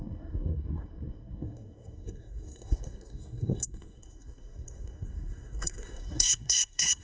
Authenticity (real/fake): fake